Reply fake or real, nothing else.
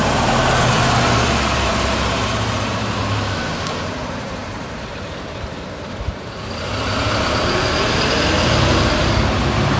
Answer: fake